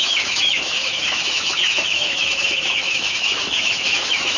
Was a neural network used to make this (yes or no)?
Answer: yes